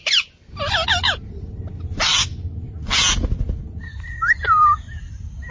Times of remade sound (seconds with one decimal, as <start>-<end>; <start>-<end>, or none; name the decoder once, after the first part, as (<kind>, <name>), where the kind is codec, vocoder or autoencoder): none